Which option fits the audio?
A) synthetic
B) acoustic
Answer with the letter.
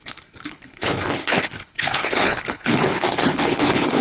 A